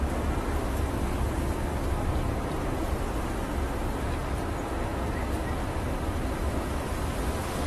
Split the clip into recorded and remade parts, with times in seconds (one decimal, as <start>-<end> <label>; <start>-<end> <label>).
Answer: 0.0-7.7 recorded